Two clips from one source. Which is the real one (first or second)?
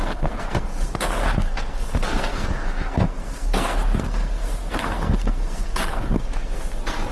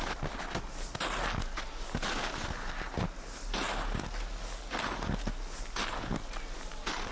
second